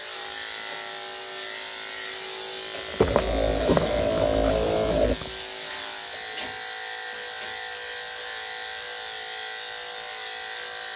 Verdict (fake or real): real